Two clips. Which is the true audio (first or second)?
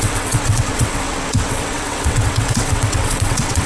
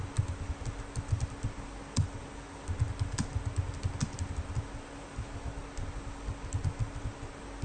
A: second